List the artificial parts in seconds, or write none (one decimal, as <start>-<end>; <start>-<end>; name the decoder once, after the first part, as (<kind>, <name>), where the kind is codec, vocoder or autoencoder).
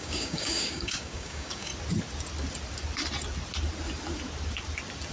0.0-1.7 (codec, DAC)